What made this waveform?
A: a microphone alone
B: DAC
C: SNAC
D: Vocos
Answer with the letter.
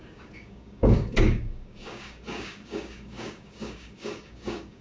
B